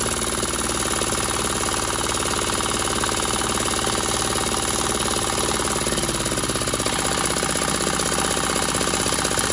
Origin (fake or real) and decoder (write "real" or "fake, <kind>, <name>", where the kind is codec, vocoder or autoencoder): real